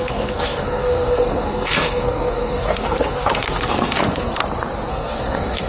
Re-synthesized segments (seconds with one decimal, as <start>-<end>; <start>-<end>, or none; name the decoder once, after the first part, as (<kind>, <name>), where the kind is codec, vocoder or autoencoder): 0.0-4.4 (codec, SNAC); 4.9-5.7